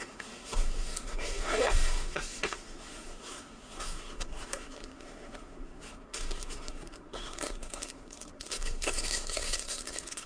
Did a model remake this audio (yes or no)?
yes